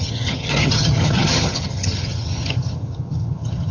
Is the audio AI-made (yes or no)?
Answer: yes